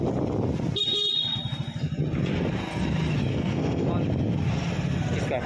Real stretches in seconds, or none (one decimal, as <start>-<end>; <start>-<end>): 0.0-3.3; 3.9-5.5